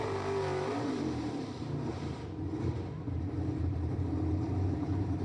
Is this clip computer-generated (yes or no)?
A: yes